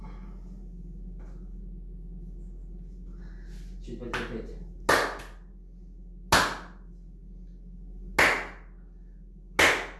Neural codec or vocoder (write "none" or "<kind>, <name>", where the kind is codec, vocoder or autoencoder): none